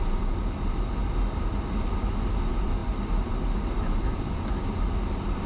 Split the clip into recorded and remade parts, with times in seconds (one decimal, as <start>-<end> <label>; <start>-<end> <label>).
0.0-2.8 recorded; 2.8-5.5 remade